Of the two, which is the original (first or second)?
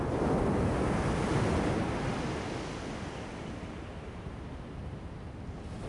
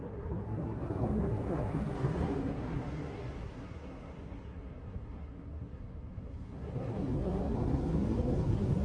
first